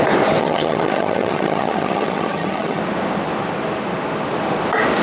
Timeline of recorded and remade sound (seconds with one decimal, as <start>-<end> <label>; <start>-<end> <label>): 0.0-0.4 recorded; 0.4-2.8 remade; 2.8-5.0 recorded